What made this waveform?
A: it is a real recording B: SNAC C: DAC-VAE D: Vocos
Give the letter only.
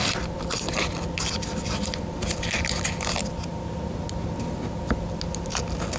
A